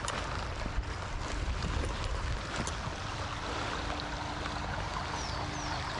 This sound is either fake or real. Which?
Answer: real